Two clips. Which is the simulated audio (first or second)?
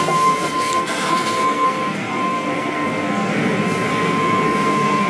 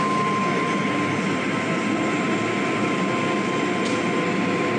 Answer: first